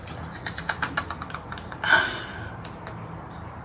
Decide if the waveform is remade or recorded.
recorded